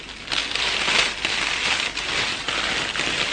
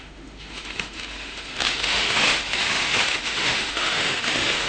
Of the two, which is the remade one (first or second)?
second